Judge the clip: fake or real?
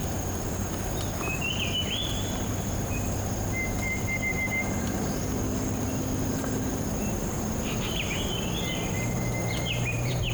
fake